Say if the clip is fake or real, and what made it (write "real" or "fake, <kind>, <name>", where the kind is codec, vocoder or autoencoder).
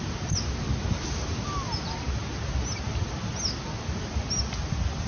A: real